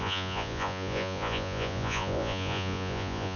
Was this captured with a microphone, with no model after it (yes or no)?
no